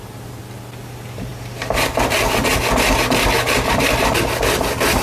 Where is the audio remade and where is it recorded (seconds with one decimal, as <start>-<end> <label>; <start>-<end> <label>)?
0.0-5.0 recorded